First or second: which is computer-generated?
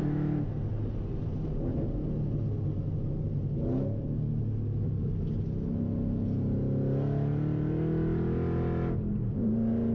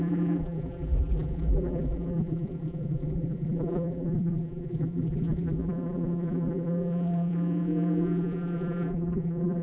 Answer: second